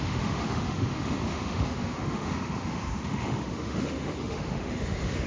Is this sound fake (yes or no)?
yes